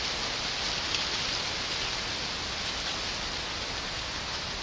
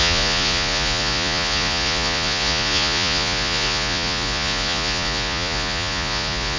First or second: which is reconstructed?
second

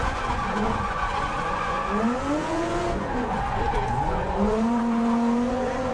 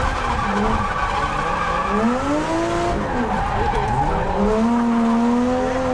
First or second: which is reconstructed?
first